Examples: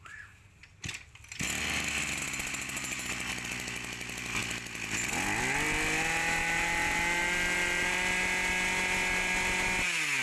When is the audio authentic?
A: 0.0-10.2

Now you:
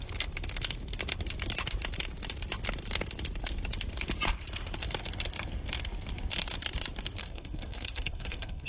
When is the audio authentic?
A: 0.0-7.2

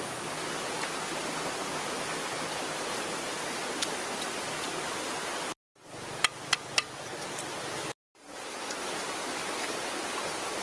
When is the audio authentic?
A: 0.0-10.6

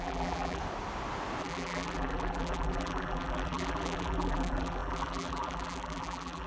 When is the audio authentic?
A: 0.6-1.4

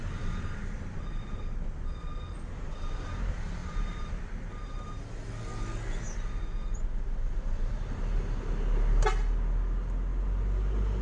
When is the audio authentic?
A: 0.0-0.6; 1.4-3.6; 5.0-11.0

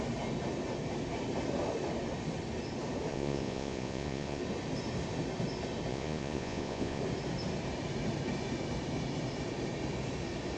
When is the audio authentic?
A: 0.0-3.1; 4.4-5.9; 7.0-10.6